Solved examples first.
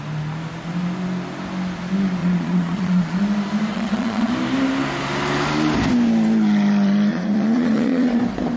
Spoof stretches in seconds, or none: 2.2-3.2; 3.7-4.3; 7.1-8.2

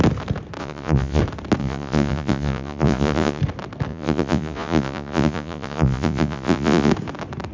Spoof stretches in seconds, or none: 0.6-1.2; 1.6-3.4; 3.9-6.9

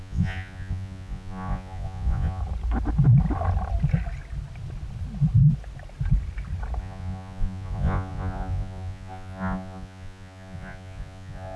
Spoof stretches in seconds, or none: 0.0-2.4; 6.8-11.6